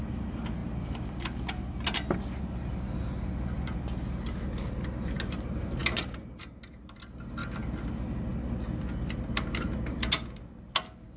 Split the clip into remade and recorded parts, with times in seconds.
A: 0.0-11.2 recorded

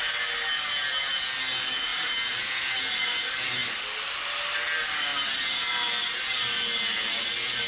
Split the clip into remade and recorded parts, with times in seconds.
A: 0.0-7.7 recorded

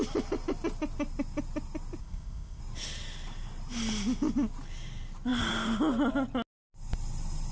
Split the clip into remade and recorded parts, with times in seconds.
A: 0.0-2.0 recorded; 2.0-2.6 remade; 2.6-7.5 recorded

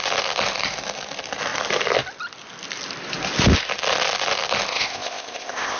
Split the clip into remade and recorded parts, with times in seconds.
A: 0.0-4.7 recorded; 4.7-5.8 remade

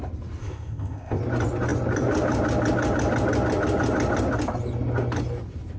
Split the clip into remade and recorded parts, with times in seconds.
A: 0.0-0.4 recorded; 0.4-1.2 remade; 1.2-5.8 recorded